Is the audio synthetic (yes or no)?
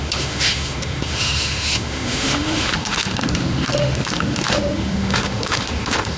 yes